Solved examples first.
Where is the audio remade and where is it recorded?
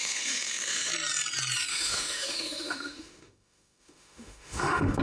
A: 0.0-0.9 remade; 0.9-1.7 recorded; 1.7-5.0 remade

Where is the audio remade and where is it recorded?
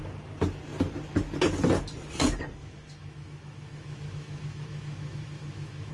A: 0.0-2.6 recorded; 2.6-5.9 remade